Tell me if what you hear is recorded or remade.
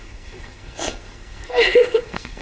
remade